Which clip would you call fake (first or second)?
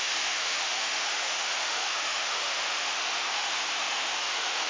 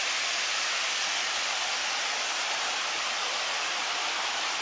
first